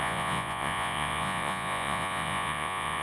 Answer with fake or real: fake